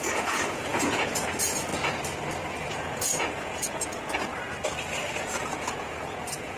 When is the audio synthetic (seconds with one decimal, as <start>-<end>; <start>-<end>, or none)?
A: 0.0-1.7; 2.7-4.3; 5.2-6.6